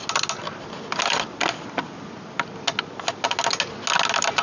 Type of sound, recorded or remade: recorded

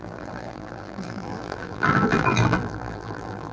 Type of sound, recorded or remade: remade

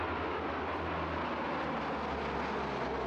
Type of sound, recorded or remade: recorded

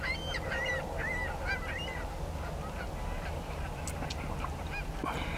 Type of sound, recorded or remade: recorded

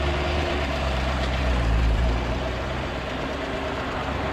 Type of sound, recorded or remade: remade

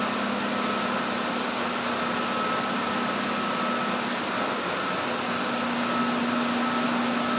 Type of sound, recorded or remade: recorded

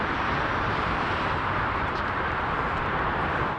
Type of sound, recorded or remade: remade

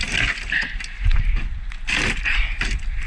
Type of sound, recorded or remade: recorded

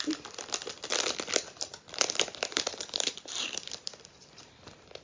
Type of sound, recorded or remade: remade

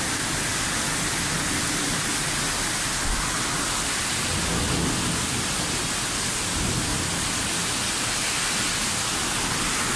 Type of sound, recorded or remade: recorded